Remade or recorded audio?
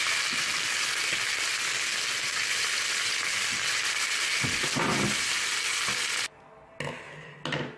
recorded